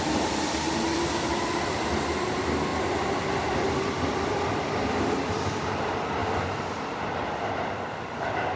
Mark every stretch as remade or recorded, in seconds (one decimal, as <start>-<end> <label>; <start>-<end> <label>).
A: 0.0-8.6 recorded